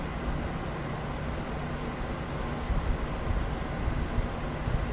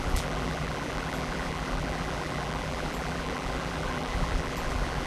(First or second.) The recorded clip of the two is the first